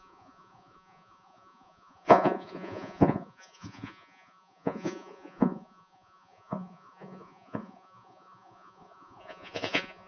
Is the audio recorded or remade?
remade